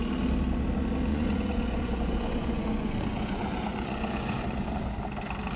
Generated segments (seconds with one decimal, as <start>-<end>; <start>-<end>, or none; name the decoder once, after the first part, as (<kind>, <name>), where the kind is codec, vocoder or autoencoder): 1.1-4.4 (vocoder, Vocos)